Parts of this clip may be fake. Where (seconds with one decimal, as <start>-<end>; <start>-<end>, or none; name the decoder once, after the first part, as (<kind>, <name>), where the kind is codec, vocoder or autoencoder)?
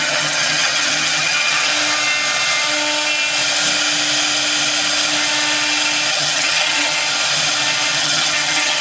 0.0-1.7 (vocoder, HiFi-GAN); 6.1-7.0; 8.0-8.8